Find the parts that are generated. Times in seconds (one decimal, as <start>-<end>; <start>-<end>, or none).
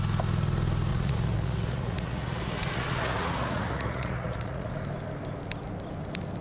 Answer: 0.9-4.7